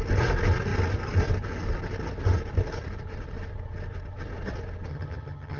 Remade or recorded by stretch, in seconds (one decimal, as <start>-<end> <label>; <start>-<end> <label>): 0.0-4.9 recorded; 4.9-5.6 remade